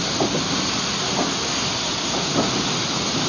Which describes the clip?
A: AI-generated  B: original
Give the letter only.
B